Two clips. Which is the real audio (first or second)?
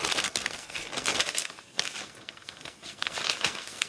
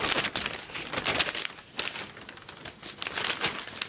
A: second